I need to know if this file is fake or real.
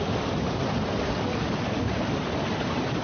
real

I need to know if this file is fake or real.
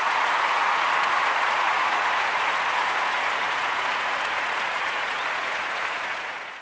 fake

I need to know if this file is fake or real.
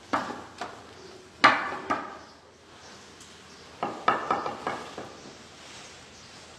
real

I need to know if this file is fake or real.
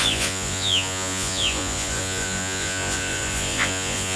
fake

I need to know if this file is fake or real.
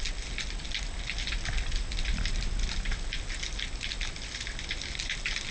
real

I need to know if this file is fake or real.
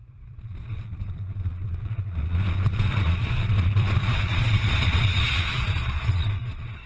fake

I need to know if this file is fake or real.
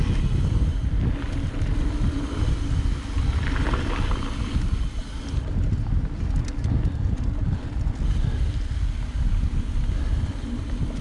real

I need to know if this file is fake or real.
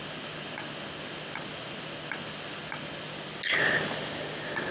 real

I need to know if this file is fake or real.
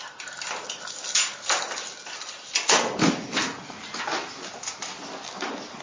real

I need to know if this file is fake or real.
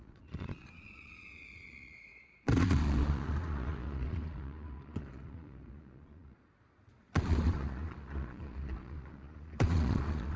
fake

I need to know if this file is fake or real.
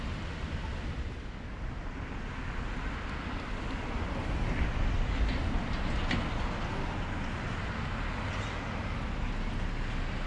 real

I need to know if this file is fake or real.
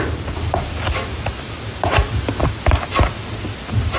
real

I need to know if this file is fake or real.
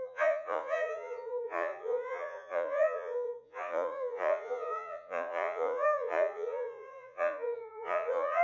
fake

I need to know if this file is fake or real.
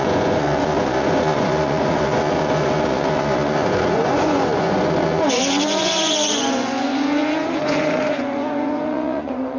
fake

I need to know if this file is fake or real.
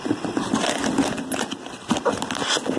real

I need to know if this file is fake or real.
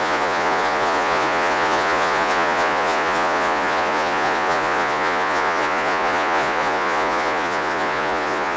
fake